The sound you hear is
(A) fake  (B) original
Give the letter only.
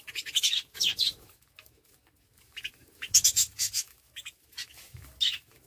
A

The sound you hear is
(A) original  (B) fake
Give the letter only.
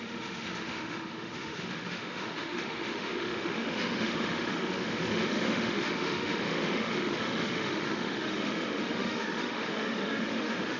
B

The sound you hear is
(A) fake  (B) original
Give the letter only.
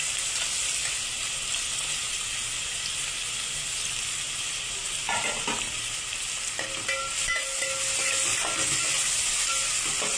B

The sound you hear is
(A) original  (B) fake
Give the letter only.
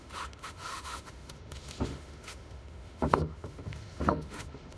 B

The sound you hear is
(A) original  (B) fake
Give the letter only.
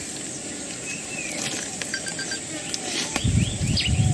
A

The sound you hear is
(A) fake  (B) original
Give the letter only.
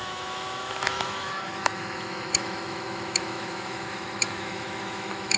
A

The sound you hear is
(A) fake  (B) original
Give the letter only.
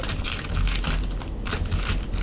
B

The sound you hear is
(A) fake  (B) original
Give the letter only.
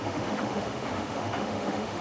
A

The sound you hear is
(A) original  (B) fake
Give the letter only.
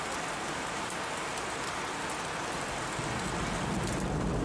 A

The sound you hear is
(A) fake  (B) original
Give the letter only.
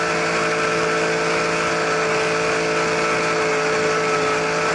B